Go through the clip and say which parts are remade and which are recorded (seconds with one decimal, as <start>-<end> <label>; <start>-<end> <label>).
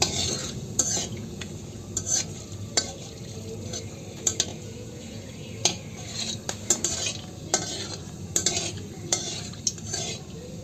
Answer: 0.0-0.4 recorded; 0.4-1.5 remade; 1.5-4.5 recorded; 4.5-5.3 remade; 5.3-10.6 recorded